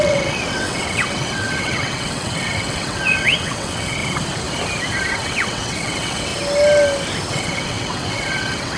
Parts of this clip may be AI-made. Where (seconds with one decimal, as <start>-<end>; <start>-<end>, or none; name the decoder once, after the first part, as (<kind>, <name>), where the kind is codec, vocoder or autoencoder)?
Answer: 0.0-4.0 (vocoder, WaveNeXt); 5.1-6.3; 7.3-8.8